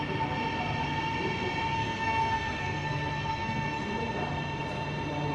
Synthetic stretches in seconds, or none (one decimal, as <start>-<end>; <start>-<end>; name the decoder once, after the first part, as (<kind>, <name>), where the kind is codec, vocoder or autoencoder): 1.7-3.8 (codec, SNAC)